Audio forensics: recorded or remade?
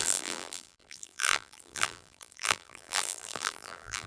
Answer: remade